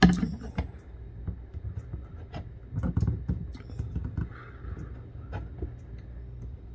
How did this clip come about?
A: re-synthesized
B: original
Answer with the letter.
B